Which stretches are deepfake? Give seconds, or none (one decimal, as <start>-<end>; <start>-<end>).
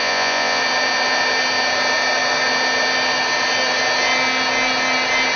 0.0-0.6